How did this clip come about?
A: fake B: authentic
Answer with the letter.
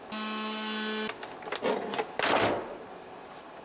B